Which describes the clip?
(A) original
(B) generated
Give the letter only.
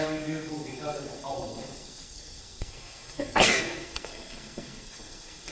B